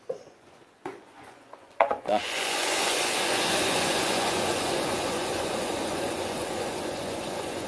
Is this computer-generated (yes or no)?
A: yes